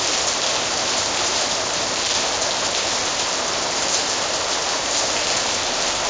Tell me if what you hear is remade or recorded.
recorded